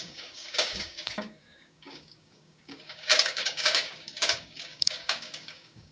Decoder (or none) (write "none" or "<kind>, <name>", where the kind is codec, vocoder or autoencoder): codec, DAC